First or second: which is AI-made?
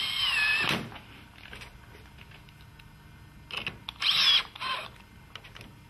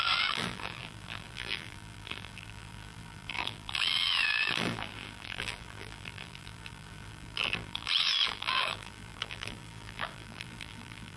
second